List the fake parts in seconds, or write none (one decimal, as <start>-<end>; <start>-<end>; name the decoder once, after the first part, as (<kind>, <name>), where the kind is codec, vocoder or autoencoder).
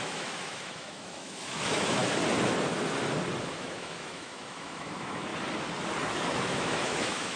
0.0-2.0 (autoencoder, DAC-VAE); 3.4-5.3; 6.1-7.4